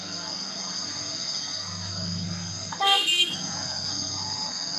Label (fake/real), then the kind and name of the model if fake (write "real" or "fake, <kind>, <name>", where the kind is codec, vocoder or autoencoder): fake, codec, SNAC